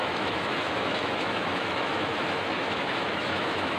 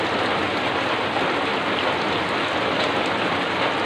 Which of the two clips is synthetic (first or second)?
first